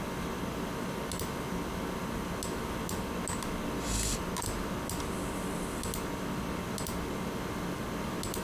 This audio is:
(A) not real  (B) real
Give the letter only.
B